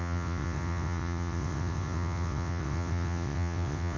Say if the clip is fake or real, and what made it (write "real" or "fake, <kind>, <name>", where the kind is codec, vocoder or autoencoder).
fake, vocoder, WaveNeXt